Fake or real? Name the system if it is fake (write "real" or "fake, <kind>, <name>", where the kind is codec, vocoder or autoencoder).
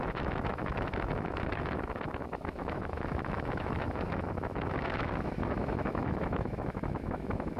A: fake, autoencoder, DAC-VAE